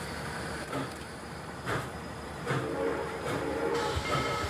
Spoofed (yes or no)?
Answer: yes